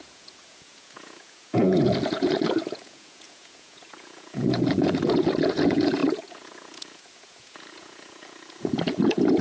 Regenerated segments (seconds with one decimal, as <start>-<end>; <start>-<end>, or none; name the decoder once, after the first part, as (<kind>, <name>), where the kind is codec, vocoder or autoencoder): 0.0-9.4 (vocoder, Vocos)